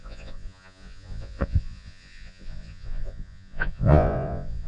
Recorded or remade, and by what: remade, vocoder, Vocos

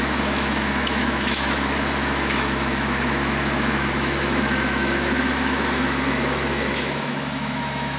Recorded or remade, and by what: remade, autoencoder, DAC-VAE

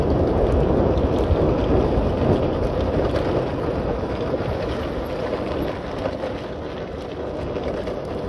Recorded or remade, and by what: recorded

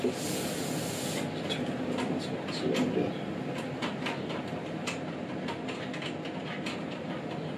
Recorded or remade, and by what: recorded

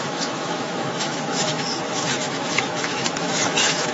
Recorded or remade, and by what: remade, autoencoder, DAC-VAE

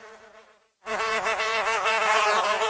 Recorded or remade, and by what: remade, vocoder, Vocos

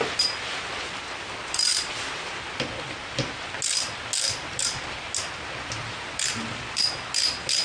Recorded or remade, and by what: recorded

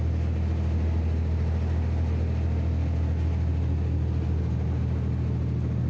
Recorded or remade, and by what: recorded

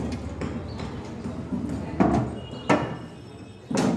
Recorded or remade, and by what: recorded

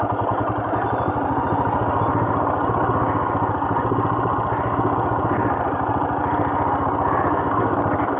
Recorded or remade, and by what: recorded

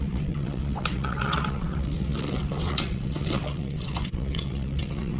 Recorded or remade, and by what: remade, vocoder, WaveNeXt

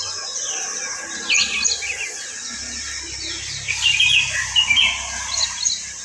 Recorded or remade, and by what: recorded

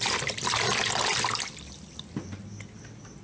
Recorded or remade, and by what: remade, vocoder, BigVGAN v2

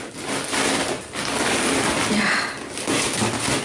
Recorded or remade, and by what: recorded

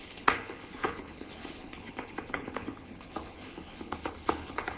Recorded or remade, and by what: remade, codec, HILCodec